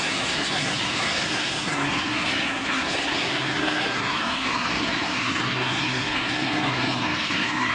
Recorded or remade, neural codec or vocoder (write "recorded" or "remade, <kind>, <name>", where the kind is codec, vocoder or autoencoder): remade, codec, SNAC